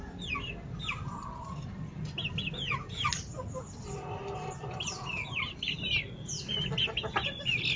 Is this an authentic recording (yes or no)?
yes